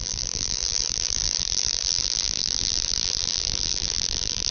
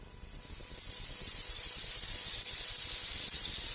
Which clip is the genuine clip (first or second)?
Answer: second